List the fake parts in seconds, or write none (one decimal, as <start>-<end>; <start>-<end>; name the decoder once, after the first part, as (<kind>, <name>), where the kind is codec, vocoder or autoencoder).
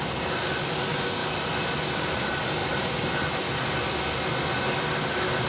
none